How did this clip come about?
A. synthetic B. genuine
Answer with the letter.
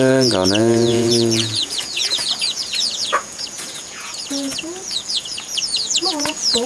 A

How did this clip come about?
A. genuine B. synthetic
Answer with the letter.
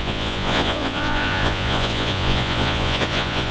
B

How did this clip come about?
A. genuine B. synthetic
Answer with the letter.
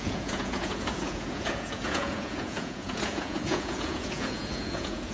B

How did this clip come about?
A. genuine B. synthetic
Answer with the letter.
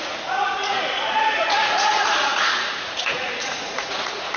B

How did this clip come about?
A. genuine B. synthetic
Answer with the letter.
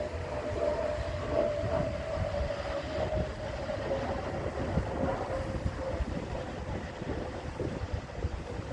A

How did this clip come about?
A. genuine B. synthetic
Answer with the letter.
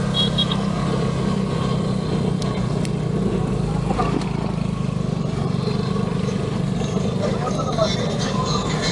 A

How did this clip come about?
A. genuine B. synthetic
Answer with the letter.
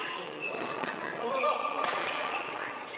B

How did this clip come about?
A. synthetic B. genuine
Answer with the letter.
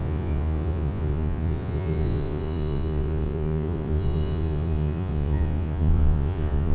A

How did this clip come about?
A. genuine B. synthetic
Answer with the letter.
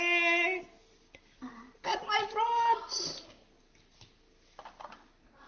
A